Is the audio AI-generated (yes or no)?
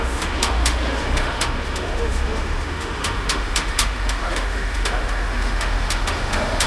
yes